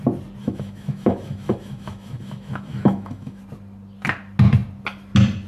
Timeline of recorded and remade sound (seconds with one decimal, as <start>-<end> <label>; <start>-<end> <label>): 0.0-0.4 recorded; 0.4-3.4 remade; 3.4-5.5 recorded